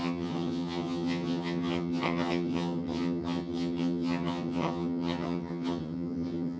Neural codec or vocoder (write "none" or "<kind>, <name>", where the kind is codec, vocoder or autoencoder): vocoder, HiFi-GAN